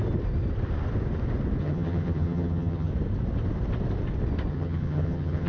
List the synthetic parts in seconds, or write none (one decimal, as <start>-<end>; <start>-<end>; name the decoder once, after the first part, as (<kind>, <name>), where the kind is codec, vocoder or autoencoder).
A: 1.6-2.9 (vocoder, HiFi-GAN); 4.5-5.5